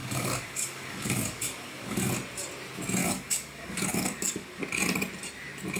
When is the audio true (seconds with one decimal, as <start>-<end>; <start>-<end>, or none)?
2.1-3.0; 4.6-5.8